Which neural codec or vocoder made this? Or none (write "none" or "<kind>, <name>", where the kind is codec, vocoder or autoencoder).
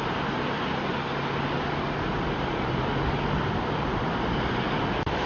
none